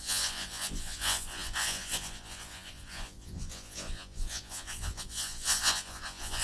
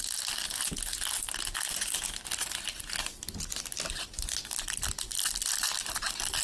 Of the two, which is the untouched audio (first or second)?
second